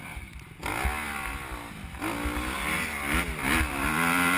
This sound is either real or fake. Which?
real